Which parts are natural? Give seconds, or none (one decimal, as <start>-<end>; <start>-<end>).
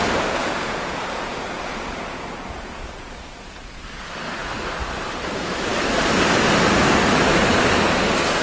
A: 4.0-8.4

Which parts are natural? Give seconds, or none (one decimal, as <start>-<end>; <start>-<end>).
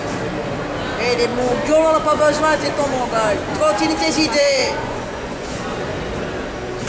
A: 0.0-4.6; 5.6-6.9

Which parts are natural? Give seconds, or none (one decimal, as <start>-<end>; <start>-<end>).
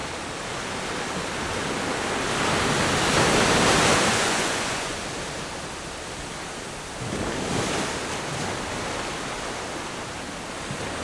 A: 0.0-4.1; 5.0-11.0